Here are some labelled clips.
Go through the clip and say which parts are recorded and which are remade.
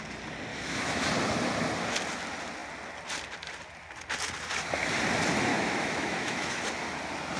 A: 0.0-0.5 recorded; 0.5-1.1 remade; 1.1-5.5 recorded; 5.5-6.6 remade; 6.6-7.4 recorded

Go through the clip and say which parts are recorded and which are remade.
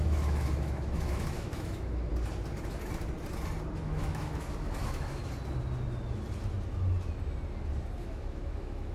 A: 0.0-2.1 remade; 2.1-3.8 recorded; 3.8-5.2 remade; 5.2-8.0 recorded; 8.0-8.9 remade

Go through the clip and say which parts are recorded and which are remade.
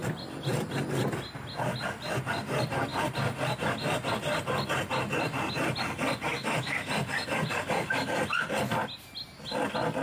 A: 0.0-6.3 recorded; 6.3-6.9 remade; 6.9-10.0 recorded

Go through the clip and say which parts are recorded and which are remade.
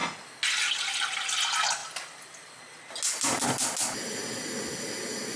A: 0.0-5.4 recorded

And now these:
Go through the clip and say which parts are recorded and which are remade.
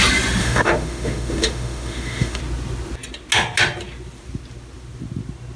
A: 0.0-0.4 recorded; 0.4-2.4 remade; 2.4-5.6 recorded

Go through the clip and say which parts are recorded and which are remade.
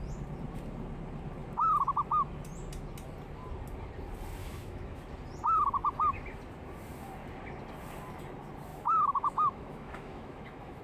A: 0.0-4.4 recorded; 4.4-5.0 remade; 5.0-8.7 recorded; 8.7-10.8 remade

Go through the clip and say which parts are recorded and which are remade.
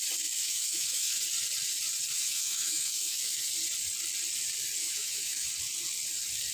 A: 0.0-0.4 recorded; 0.4-1.2 remade; 1.2-2.1 recorded; 2.1-3.5 remade; 3.5-4.8 recorded; 4.8-5.5 remade; 5.5-6.5 recorded